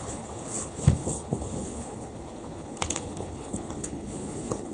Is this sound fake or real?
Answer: fake